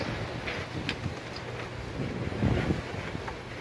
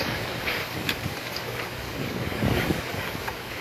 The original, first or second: first